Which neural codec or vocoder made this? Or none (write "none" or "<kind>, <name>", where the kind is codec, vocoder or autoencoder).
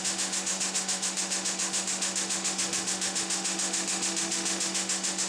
autoencoder, DAC-VAE